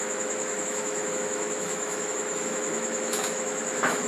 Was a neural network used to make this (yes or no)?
yes